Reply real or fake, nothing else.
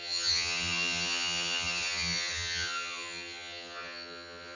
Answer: fake